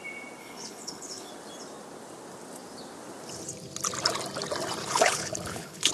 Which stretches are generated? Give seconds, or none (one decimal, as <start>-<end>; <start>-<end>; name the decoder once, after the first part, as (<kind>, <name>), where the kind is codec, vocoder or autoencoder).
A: 0.4-1.3 (codec, HILCodec); 4.8-5.9